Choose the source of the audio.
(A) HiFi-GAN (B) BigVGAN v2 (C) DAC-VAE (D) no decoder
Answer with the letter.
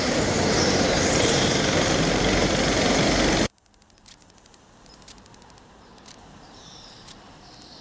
B